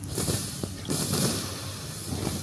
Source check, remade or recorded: recorded